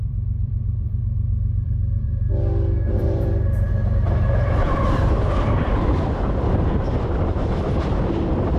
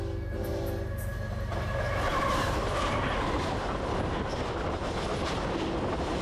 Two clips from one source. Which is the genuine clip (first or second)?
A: second